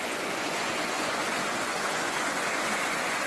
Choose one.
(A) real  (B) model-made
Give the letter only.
B